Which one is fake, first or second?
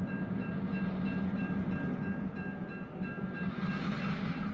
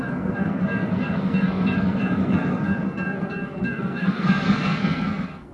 second